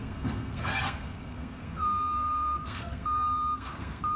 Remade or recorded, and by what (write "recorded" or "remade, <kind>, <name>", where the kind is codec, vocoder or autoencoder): remade, codec, SNAC